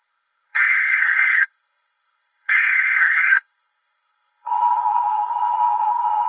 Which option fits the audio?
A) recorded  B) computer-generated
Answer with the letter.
B